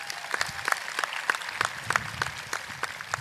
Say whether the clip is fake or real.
real